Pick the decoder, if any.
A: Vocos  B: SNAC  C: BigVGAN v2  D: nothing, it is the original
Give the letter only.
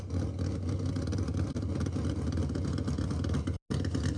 D